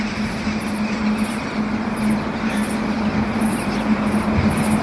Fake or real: real